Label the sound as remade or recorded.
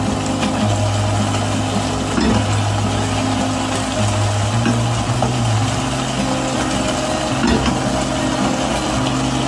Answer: recorded